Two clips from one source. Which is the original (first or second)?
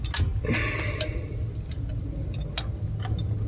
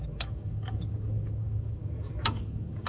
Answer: first